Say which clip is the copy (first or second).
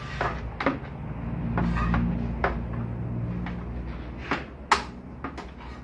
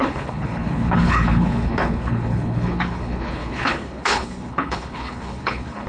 second